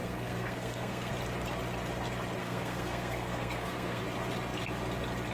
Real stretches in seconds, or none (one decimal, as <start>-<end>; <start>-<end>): 1.1-2.4; 4.0-5.3